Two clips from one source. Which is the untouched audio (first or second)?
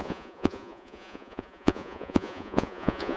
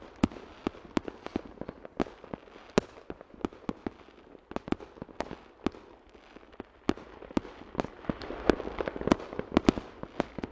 second